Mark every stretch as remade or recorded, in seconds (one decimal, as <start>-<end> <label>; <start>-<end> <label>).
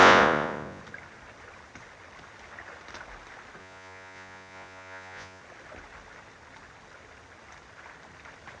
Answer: 0.0-0.8 remade; 0.8-3.6 recorded; 3.6-5.4 remade; 5.4-8.6 recorded